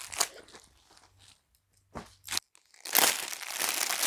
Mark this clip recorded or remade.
recorded